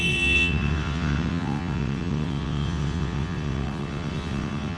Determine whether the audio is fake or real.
fake